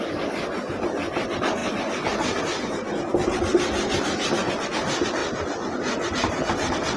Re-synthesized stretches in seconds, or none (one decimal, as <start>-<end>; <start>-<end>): 1.6-2.4